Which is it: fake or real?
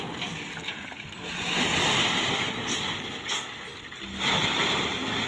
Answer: real